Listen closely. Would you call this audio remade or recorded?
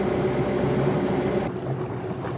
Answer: recorded